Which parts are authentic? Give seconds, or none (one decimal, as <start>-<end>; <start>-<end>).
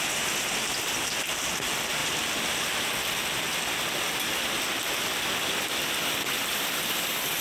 0.0-7.4